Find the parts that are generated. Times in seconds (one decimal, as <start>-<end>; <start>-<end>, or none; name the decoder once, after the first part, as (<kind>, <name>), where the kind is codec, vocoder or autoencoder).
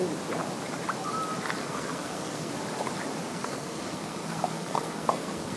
1.6-2.5 (codec, SNAC); 3.3-5.6